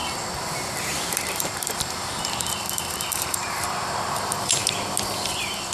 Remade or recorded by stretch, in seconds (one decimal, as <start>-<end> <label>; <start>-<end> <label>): 0.0-0.8 recorded; 0.8-4.6 remade; 4.6-5.3 recorded; 5.3-5.7 remade